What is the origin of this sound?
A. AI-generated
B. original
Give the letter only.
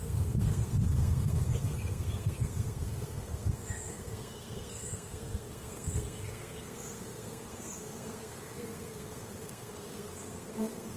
A